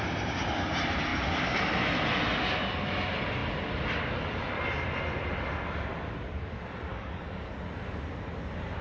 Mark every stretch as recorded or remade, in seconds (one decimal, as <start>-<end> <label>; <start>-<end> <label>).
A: 0.0-6.9 recorded; 6.9-7.5 remade; 7.5-8.8 recorded